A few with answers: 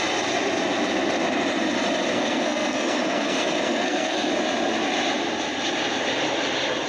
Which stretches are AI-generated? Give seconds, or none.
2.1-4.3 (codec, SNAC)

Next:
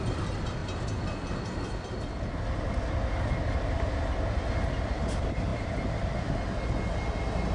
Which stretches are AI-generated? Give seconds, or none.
none

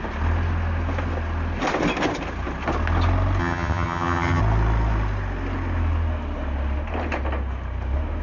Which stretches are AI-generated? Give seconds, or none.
3.4-4.4 (vocoder, HiFi-GAN)

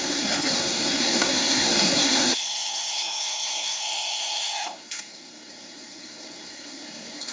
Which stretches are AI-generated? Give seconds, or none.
0.0-7.3 (codec, SNAC)